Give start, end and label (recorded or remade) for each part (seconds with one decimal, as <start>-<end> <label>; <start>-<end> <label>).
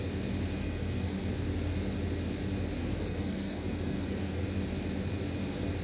0.0-0.6 recorded; 0.6-1.3 remade; 1.3-2.8 recorded; 2.8-4.4 remade; 4.4-5.8 recorded